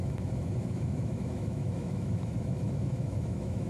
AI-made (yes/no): yes